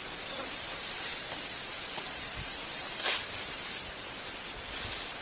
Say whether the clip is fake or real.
fake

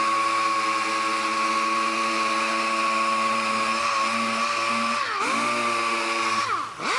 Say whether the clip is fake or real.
real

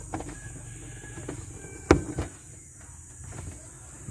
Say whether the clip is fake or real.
real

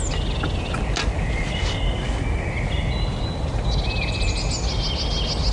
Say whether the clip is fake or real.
real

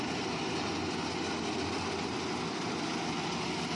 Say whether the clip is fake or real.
real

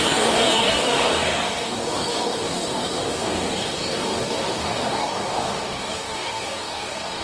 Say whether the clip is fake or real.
fake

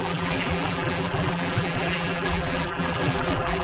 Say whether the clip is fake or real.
fake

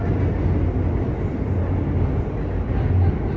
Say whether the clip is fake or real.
real